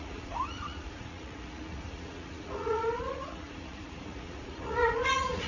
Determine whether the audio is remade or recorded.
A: remade